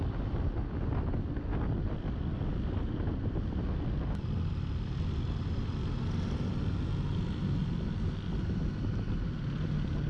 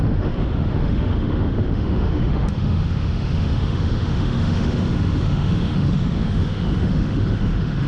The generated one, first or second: second